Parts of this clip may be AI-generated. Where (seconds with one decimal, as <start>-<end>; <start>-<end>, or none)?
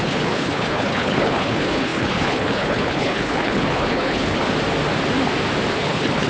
0.0-4.4; 5.7-6.3